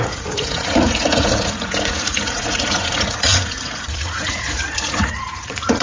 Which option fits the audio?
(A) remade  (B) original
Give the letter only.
A